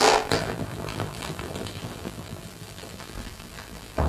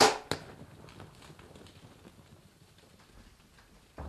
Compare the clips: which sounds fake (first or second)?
first